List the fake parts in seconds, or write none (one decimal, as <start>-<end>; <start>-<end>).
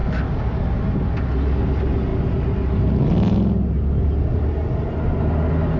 0.0-0.6